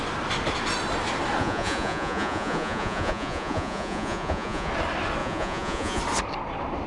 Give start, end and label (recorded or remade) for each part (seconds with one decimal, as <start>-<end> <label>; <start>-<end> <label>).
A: 0.0-1.4 recorded; 1.4-4.7 remade; 4.7-5.2 recorded; 5.2-6.0 remade; 6.0-6.9 recorded

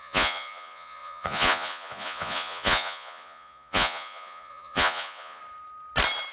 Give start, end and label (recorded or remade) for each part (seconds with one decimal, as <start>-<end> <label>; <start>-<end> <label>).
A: 0.0-5.4 remade; 5.4-6.3 recorded

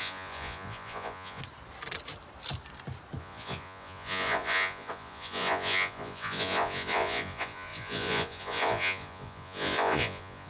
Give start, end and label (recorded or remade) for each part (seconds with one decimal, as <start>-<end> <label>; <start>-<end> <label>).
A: 0.0-1.4 remade; 1.4-3.2 recorded; 3.2-10.5 remade